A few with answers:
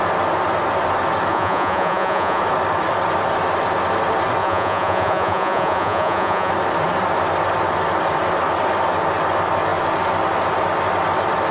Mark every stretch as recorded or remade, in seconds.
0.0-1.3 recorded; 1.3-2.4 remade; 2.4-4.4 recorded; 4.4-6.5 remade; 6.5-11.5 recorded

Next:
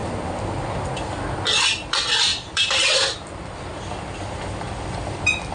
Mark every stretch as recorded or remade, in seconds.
0.0-1.7 recorded; 1.7-5.5 remade

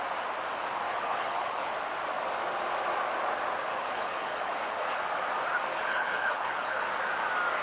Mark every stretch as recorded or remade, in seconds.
0.0-0.9 recorded; 0.9-1.7 remade; 1.7-3.7 recorded; 3.7-5.0 remade; 5.0-5.7 recorded; 5.7-6.9 remade; 6.9-7.6 recorded

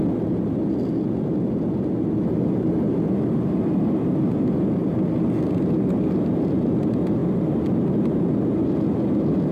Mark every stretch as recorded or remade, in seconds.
0.0-7.2 recorded; 7.2-7.8 remade; 7.8-9.5 recorded

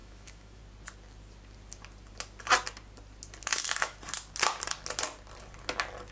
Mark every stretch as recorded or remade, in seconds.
0.0-0.6 remade; 0.6-3.5 recorded; 3.5-4.0 remade; 4.0-6.1 recorded

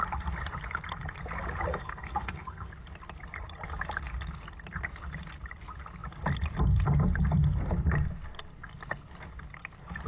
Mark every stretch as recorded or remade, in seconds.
0.0-1.7 recorded; 1.7-2.7 remade; 2.7-10.1 recorded

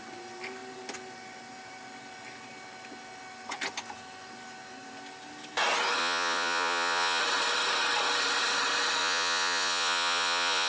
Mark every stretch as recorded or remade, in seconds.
0.0-6.0 recorded; 6.0-7.2 remade; 7.2-9.0 recorded; 9.0-10.7 remade

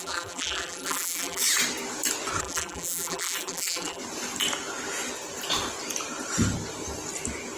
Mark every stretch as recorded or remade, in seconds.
0.0-1.4 remade; 1.4-2.4 recorded; 2.4-4.0 remade; 4.0-7.6 recorded